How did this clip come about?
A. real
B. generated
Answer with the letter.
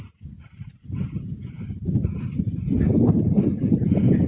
A